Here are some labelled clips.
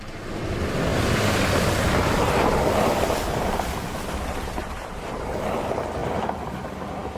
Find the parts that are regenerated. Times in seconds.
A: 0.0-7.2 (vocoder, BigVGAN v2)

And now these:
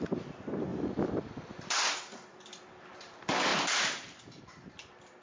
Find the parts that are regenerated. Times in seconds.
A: 0.7-1.3 (vocoder, BigVGAN v2); 3.5-4.4